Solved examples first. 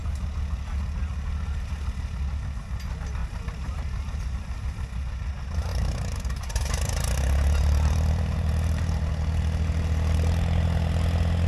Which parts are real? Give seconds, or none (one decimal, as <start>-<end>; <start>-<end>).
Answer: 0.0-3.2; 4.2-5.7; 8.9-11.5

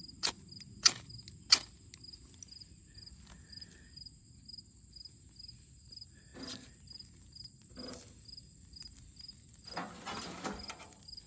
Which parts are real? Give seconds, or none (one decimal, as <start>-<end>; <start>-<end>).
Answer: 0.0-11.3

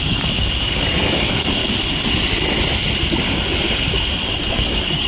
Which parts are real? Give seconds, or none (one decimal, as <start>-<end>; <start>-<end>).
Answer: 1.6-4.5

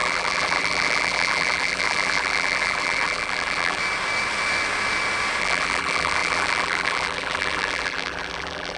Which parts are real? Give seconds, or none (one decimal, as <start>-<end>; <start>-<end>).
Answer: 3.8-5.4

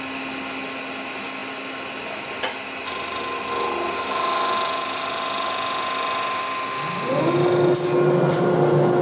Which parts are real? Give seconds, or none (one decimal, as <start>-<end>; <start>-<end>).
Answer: 0.0-9.0

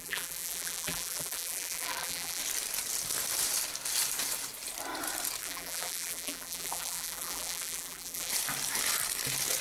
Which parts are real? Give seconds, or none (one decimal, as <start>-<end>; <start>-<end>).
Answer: 2.4-5.4; 8.3-9.6

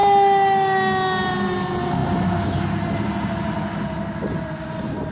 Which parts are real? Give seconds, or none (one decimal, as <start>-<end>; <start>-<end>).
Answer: 0.0-5.1

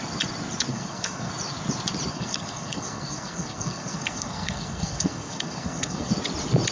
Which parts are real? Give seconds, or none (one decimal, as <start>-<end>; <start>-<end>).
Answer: 0.0-0.7; 1.3-2.1; 6.1-6.7